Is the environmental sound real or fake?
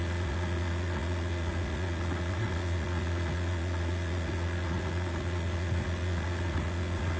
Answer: fake